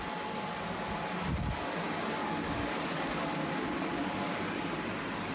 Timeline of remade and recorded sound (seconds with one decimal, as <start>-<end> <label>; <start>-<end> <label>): 0.0-2.2 recorded; 2.2-4.4 remade; 4.4-5.3 recorded

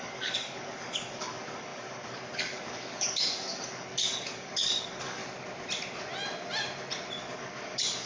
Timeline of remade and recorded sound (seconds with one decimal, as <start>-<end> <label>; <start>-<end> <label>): 0.0-5.2 remade; 5.2-7.2 recorded; 7.2-8.1 remade

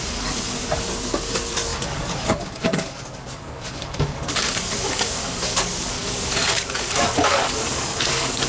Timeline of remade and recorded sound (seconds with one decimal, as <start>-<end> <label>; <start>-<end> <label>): 0.0-8.5 remade

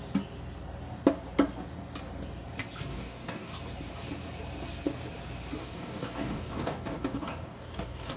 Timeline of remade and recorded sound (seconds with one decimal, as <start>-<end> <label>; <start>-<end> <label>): 0.0-2.9 recorded; 2.9-3.5 remade; 3.5-5.6 recorded; 5.6-8.2 remade

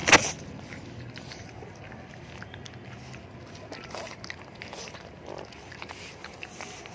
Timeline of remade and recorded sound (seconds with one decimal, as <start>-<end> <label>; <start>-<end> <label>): 0.0-6.9 recorded

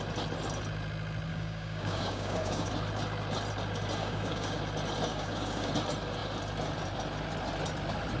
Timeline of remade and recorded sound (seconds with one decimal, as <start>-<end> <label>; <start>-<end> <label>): 0.0-1.3 recorded; 1.3-2.7 remade; 2.7-4.0 recorded; 4.0-4.6 remade; 4.6-5.1 recorded; 5.1-5.7 remade; 5.7-8.2 recorded

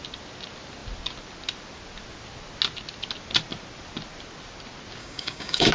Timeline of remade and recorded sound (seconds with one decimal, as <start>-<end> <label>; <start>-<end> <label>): 0.0-5.0 recorded; 5.0-5.7 remade